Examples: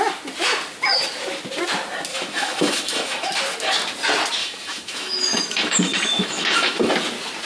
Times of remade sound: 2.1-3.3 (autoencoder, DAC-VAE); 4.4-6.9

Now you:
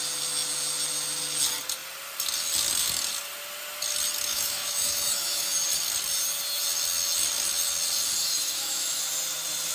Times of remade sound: 4.3-5.5 (autoencoder, DAC-VAE); 8.2-9.0

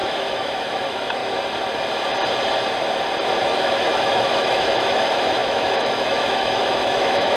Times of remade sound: 0.0-1.2 (autoencoder, DAC-VAE); 3.4-7.4

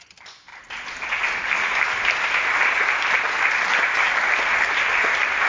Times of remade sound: none